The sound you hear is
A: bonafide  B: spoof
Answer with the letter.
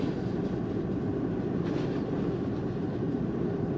B